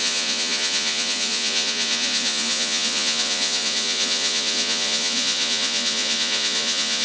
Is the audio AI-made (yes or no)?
yes